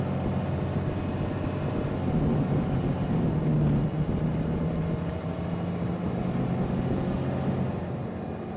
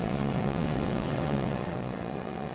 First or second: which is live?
first